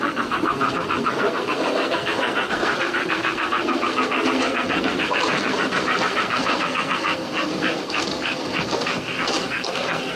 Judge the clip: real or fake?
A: fake